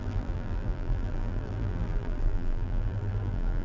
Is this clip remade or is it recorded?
remade